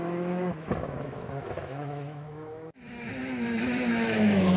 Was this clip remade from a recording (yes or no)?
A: yes